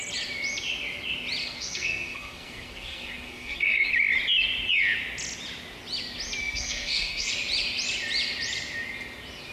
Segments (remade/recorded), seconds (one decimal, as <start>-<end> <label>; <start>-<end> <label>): 0.0-1.4 recorded; 1.4-3.9 remade; 3.9-6.4 recorded; 6.4-7.3 remade; 7.3-9.5 recorded